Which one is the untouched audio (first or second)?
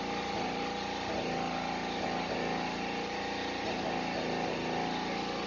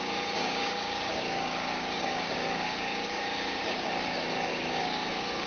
first